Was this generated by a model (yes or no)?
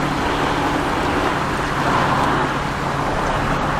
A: no